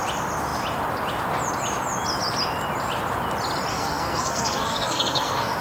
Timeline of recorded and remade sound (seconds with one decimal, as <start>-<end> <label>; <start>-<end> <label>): 0.0-3.7 recorded; 3.7-5.6 remade